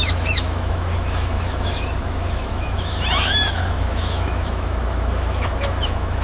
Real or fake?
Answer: fake